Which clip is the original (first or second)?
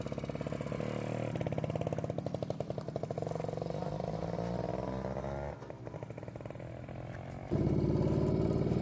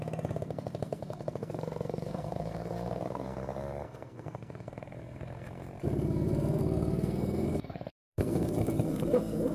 first